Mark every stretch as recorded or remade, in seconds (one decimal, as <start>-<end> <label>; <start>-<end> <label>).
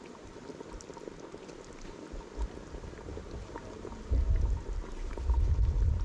0.0-3.1 recorded; 3.1-5.2 remade; 5.2-6.0 recorded